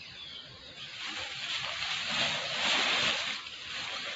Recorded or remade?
recorded